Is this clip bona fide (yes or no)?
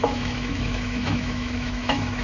no